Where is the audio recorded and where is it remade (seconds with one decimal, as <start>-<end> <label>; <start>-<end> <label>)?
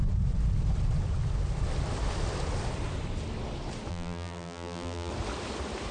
0.0-3.9 recorded; 3.9-5.1 remade; 5.1-5.9 recorded